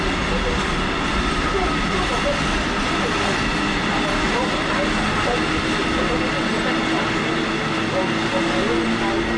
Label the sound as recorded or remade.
recorded